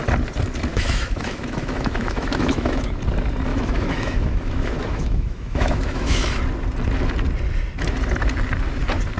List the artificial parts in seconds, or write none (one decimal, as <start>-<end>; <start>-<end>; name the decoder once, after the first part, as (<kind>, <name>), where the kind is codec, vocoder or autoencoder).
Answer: 0.7-3.0 (autoencoder, DAC-VAE); 3.5-6.4